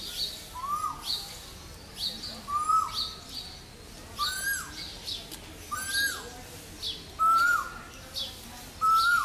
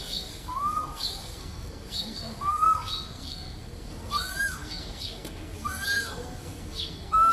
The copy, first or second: second